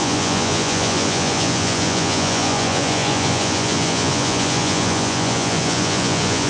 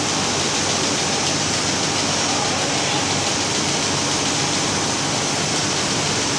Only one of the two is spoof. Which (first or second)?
first